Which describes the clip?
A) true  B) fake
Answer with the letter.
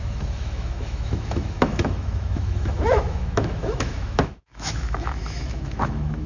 B